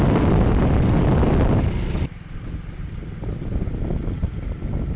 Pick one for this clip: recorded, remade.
recorded